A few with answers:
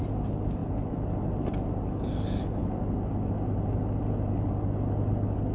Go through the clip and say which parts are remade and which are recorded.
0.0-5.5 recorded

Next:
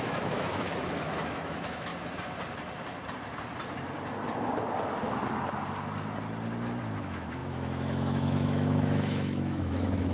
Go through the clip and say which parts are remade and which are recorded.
0.0-1.9 remade; 1.9-7.0 recorded; 7.0-10.1 remade

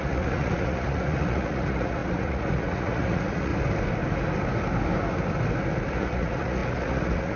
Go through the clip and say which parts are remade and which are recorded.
0.0-3.5 remade; 3.5-5.9 recorded; 5.9-7.4 remade